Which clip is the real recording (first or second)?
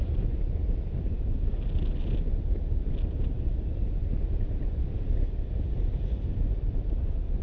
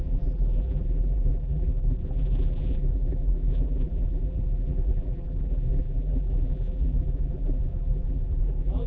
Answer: first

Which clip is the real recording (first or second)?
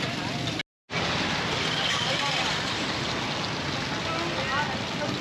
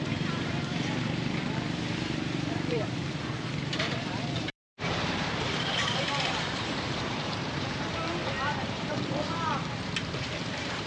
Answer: first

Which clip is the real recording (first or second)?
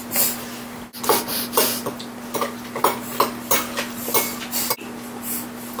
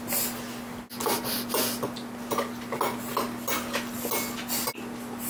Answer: second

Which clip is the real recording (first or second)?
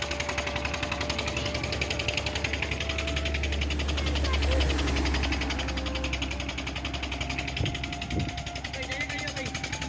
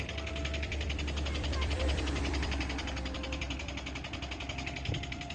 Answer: first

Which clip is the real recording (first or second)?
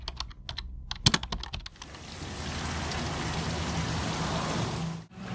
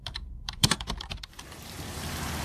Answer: first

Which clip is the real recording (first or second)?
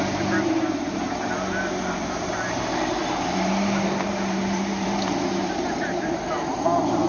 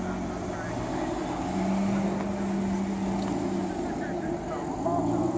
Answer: second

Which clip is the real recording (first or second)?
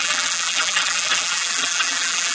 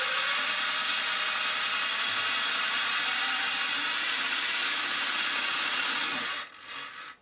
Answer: second